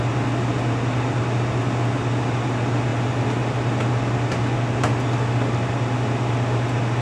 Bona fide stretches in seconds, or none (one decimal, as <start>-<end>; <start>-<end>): 0.0-7.0